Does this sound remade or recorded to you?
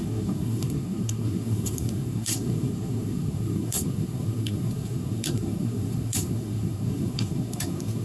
remade